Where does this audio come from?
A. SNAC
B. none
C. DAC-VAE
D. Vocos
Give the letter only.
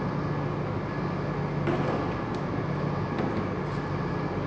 B